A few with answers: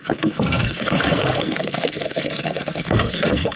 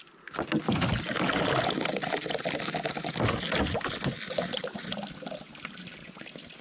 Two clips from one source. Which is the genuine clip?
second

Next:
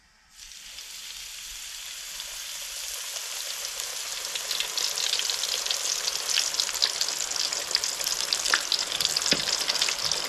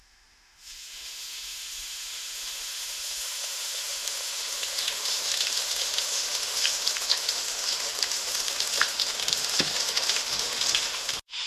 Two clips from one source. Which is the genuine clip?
first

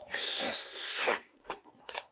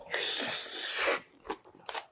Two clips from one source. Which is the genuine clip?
second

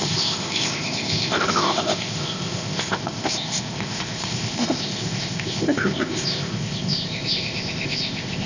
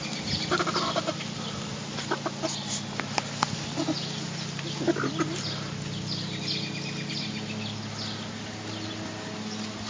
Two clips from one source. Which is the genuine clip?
second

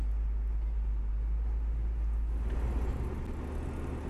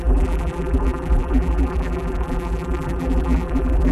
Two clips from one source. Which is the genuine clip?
first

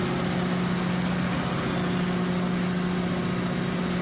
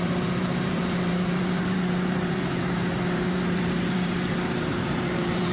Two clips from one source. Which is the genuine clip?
first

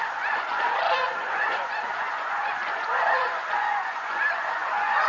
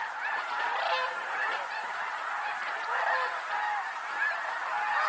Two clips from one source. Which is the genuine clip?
second